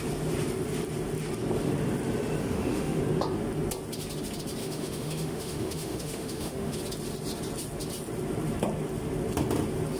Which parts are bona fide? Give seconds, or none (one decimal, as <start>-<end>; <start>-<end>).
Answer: 0.0-2.4; 3.0-4.6; 6.8-10.0